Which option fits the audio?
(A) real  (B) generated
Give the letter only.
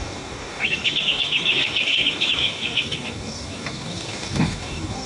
B